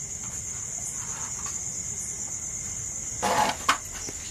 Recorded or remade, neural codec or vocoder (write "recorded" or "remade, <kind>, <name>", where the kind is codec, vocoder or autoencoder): remade, vocoder, BigVGAN v2